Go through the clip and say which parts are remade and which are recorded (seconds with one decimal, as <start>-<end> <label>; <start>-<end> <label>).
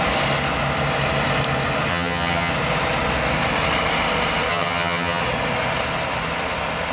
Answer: 0.0-1.9 recorded; 1.9-2.5 remade; 2.5-4.5 recorded; 4.5-5.2 remade; 5.2-6.9 recorded